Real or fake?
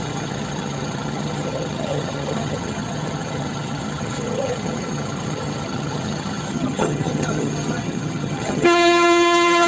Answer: fake